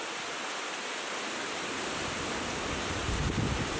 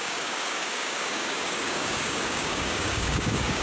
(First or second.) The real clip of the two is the first